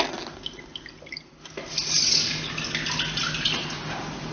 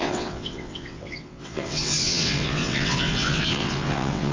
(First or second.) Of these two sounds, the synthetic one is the second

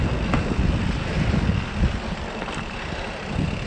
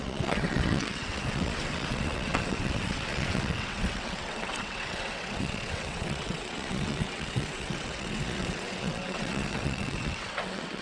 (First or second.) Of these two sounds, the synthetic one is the second